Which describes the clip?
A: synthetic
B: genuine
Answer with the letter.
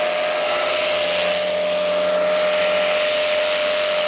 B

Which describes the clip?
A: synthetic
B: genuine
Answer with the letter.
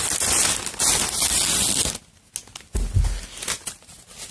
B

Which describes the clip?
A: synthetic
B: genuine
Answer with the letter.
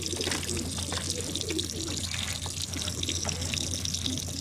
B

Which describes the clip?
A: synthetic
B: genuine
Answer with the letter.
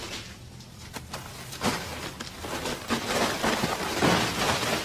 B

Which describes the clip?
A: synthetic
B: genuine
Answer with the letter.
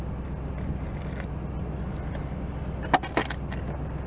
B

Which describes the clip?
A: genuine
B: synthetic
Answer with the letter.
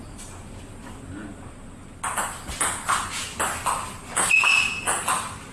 A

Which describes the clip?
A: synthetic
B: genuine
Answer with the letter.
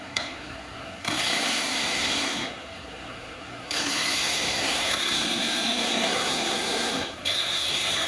A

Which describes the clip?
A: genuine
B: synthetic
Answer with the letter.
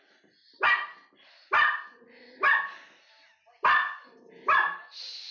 A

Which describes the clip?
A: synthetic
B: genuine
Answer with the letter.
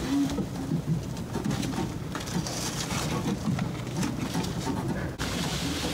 B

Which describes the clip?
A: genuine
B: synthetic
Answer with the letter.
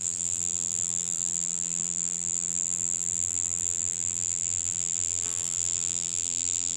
B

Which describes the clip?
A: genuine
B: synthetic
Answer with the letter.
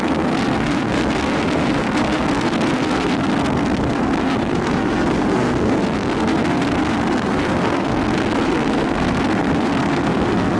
B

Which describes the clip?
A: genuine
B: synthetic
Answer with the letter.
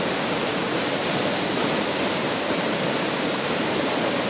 B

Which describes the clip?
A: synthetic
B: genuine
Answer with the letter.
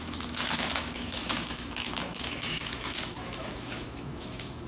A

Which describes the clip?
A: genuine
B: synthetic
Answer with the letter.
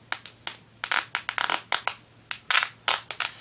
A